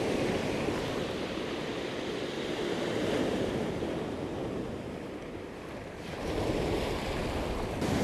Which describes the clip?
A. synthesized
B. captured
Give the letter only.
A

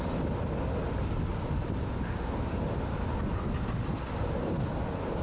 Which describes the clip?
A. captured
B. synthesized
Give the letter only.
A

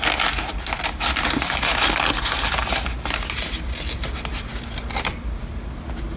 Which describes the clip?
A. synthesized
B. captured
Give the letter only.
B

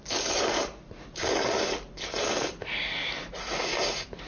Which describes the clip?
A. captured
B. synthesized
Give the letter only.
A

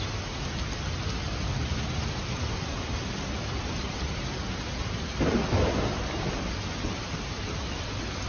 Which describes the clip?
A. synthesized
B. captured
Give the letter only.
B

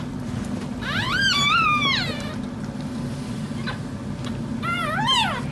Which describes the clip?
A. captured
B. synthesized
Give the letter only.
A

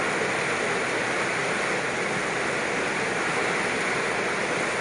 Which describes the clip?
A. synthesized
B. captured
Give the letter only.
B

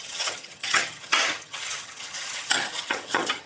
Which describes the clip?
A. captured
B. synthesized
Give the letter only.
B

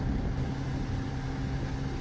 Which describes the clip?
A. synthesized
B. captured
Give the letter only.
B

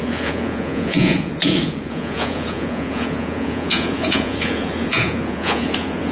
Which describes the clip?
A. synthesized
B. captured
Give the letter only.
A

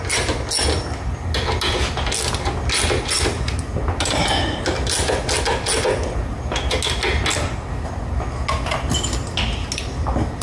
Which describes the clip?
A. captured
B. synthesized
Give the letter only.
A